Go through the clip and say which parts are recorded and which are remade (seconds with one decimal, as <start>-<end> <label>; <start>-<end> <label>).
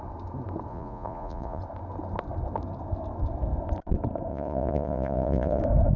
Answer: 0.0-0.7 recorded; 0.7-1.6 remade; 1.6-4.3 recorded; 4.3-5.6 remade; 5.6-6.0 recorded